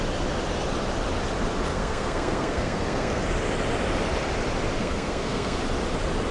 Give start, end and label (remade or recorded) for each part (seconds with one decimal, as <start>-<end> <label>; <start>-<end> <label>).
0.0-1.7 recorded; 1.7-3.2 remade; 3.2-4.8 recorded; 4.8-5.6 remade; 5.6-6.3 recorded